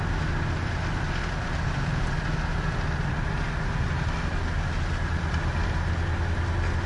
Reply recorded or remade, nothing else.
recorded